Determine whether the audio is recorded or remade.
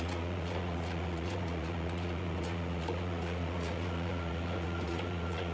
remade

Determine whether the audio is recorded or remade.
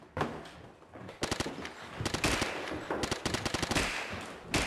recorded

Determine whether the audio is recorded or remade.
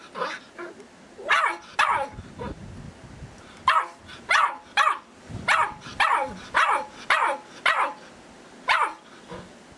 recorded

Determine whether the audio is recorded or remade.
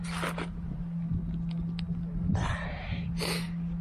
recorded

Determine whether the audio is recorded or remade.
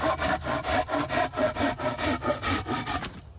recorded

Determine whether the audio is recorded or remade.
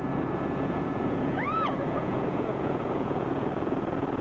remade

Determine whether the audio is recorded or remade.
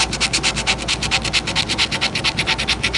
recorded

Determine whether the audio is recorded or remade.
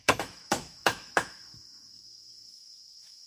remade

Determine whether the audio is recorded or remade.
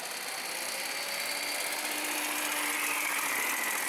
recorded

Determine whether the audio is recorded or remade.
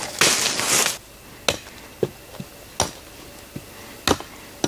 recorded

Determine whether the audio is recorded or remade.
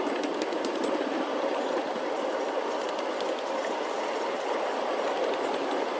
recorded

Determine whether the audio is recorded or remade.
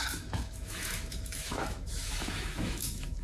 remade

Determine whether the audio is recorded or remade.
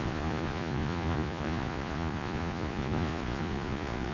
remade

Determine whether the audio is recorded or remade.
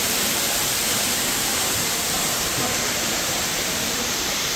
remade